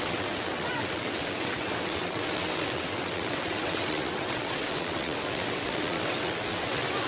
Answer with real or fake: fake